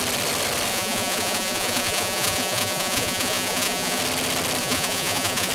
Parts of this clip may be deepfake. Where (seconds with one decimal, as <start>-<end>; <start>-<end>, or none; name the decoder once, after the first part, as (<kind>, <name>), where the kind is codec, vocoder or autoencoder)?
0.7-4.0 (vocoder, Vocos); 4.6-5.5